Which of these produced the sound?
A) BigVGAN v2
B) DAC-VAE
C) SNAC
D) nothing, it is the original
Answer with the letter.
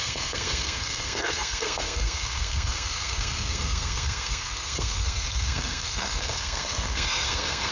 C